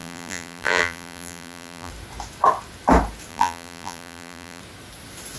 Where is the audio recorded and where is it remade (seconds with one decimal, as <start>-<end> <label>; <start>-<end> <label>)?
0.0-1.9 remade; 1.9-3.3 recorded; 3.3-4.6 remade; 4.6-5.4 recorded